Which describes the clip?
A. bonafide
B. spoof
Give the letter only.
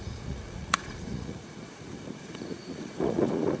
B